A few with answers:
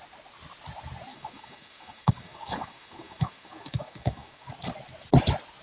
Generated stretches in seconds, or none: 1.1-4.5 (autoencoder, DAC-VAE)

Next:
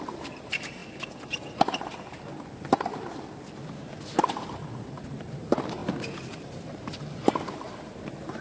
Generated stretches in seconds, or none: 0.0-0.8 (vocoder, BigVGAN v2); 4.2-5.8; 6.4-8.4